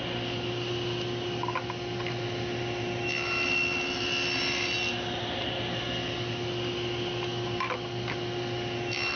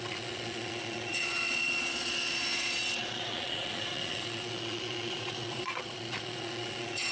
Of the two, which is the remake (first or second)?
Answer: second